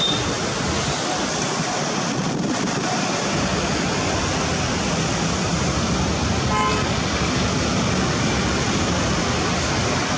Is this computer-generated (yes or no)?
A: no